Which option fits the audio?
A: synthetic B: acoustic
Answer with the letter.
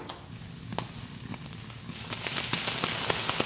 B